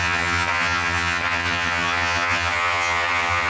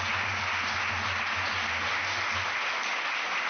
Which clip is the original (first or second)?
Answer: second